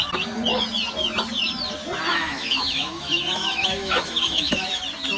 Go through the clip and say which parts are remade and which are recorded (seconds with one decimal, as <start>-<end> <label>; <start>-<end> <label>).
0.0-2.1 recorded; 2.1-4.8 remade; 4.8-5.2 recorded